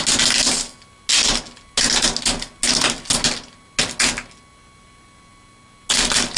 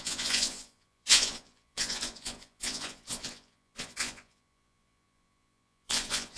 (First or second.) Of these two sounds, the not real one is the second